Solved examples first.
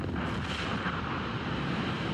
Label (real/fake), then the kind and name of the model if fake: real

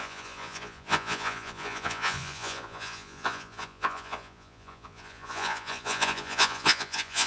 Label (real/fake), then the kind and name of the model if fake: fake, vocoder, Vocos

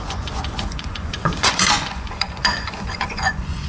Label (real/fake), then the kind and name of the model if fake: fake, vocoder, Vocos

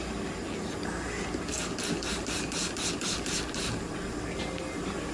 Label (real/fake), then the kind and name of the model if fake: real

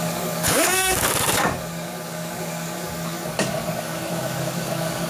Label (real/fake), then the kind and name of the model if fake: fake, codec, DAC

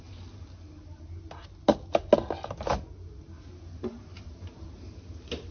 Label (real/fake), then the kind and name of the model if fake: real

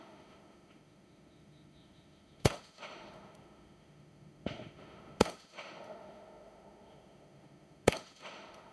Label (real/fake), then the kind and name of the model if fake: fake, autoencoder, DAC-VAE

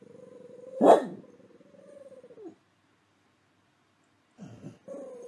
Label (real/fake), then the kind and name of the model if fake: real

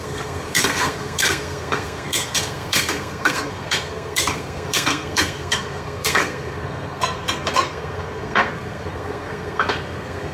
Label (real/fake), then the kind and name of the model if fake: fake, codec, SNAC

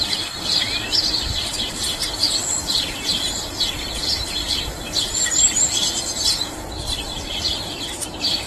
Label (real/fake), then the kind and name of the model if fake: fake, vocoder, BigVGAN v2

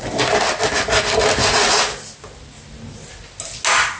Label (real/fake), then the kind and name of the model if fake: real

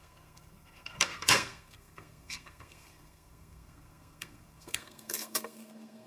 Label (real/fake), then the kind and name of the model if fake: fake, codec, SNAC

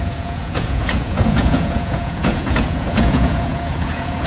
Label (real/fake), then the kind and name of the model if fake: fake, vocoder, Vocos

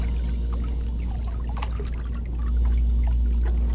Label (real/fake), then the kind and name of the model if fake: real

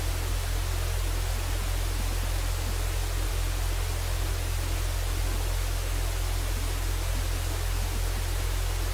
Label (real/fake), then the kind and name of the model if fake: real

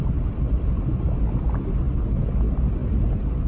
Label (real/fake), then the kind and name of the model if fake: real